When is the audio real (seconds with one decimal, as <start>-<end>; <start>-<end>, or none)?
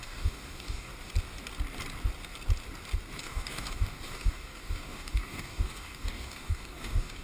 0.9-3.2